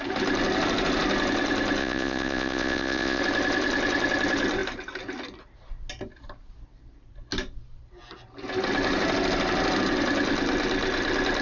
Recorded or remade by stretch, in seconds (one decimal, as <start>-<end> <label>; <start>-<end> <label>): 0.0-1.8 recorded; 1.8-3.2 remade; 3.2-11.4 recorded